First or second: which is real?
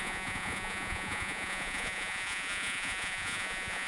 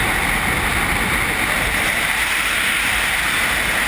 second